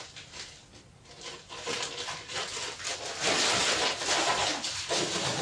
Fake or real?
real